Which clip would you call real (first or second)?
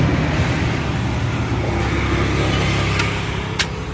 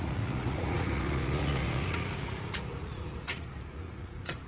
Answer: first